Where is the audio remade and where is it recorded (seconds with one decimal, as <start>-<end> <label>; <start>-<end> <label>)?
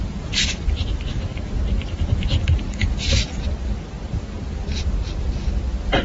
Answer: 0.0-1.3 remade; 1.3-4.1 recorded; 4.1-6.0 remade